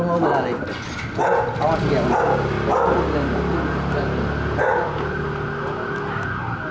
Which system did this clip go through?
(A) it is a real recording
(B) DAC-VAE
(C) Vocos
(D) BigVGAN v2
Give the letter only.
A